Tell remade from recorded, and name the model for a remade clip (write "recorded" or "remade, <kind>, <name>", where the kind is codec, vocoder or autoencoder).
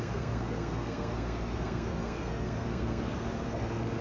remade, codec, SNAC